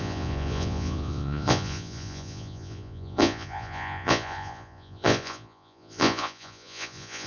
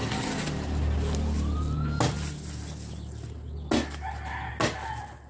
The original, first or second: second